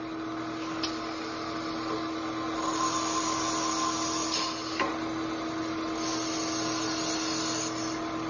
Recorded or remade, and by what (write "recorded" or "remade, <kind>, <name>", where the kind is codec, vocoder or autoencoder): recorded